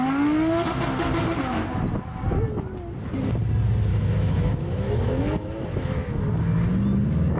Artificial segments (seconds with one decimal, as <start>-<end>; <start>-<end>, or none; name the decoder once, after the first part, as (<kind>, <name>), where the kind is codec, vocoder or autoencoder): 3.9-6.2 (autoencoder, DAC-VAE)

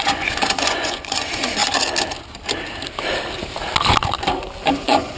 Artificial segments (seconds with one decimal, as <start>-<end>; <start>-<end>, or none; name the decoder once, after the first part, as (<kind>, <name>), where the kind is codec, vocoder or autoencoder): 0.0-1.6 (vocoder, Vocos); 4.7-5.2

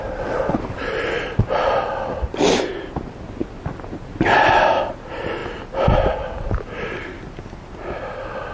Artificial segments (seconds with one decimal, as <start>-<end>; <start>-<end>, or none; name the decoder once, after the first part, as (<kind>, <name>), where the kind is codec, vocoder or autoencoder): none